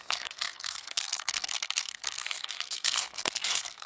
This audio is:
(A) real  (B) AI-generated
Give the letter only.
B